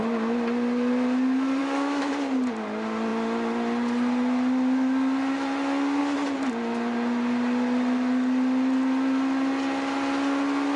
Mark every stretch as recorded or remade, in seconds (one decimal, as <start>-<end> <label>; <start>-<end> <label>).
0.0-1.6 recorded; 1.6-2.1 remade; 2.1-10.8 recorded